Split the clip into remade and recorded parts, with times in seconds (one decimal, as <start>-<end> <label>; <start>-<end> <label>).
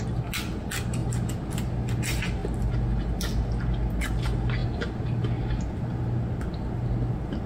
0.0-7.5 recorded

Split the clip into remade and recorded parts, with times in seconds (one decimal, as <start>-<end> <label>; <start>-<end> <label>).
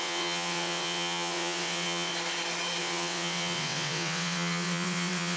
0.0-2.1 remade; 2.1-2.8 recorded; 2.8-5.4 remade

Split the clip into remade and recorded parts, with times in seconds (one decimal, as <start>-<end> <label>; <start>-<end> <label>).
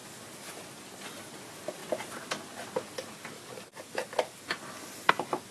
0.0-5.5 recorded